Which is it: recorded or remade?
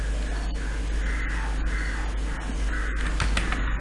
recorded